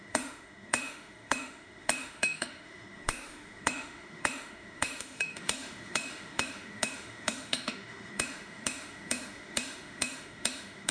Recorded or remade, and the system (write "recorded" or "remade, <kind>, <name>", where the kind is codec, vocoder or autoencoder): remade, autoencoder, DAC-VAE